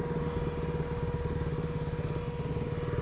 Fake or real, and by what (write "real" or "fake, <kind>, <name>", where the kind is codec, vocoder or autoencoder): real